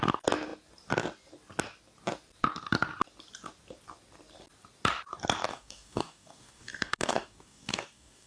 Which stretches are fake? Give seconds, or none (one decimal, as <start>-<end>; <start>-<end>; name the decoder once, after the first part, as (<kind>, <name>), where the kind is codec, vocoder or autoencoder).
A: 5.5-8.3 (codec, DAC)